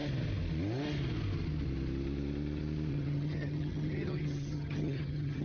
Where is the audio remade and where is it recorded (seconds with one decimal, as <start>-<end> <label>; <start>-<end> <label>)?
0.0-2.9 recorded; 2.9-5.4 remade